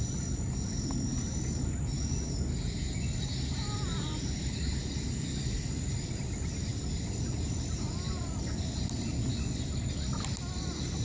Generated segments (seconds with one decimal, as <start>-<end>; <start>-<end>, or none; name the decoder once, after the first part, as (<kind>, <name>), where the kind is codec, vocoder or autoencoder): none